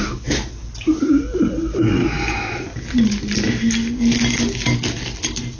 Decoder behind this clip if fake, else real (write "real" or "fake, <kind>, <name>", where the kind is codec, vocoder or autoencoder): real